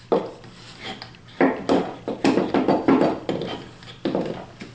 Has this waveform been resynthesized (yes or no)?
no